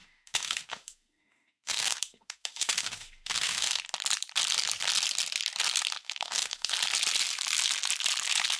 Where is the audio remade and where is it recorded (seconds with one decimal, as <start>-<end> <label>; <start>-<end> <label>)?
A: 0.0-3.8 remade; 3.8-6.0 recorded; 6.0-6.7 remade; 6.7-8.6 recorded